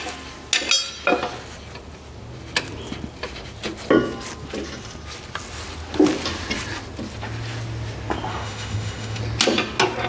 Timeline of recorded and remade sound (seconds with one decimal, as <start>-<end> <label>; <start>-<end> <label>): 0.0-8.3 recorded; 8.3-9.2 remade; 9.2-10.1 recorded